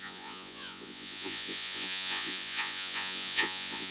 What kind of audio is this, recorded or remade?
remade